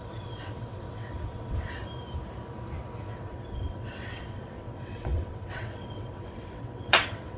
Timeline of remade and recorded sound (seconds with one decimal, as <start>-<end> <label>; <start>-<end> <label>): 0.0-1.8 remade; 1.8-3.1 recorded; 3.1-7.4 remade